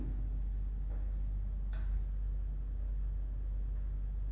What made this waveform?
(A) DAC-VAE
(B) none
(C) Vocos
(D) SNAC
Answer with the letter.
B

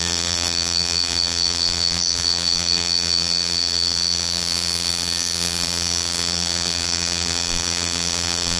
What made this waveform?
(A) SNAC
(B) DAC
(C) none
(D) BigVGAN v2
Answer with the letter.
D